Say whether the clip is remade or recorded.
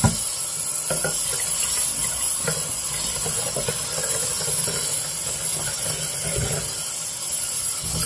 recorded